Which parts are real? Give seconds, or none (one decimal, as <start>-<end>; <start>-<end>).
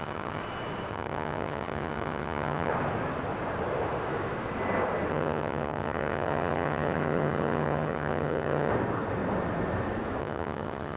0.4-0.9; 2.7-5.1; 8.7-10.2